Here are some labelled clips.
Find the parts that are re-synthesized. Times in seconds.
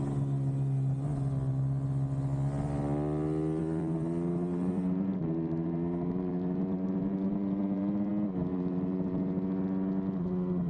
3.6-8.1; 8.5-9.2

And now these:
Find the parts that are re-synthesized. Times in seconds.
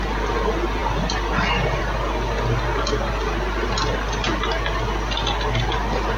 none